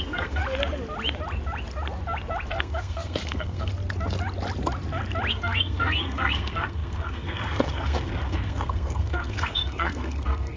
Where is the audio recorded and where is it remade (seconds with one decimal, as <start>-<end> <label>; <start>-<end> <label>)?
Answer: 0.0-0.4 remade; 0.4-2.5 recorded; 2.5-3.7 remade; 3.7-5.3 recorded; 5.3-10.6 remade